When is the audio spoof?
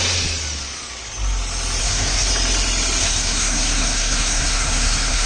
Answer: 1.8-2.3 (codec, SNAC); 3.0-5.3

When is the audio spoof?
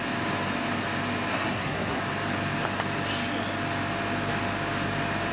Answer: 1.3-2.0 (codec, SNAC)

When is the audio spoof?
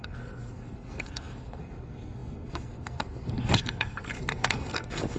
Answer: 0.0-5.2 (codec, SNAC)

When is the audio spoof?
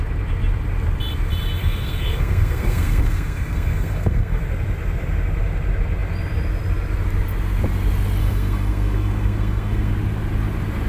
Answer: 1.6-4.4 (codec, SNAC); 8.2-9.9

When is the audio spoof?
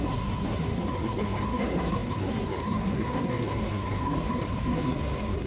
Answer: 0.0-5.5 (codec, SNAC)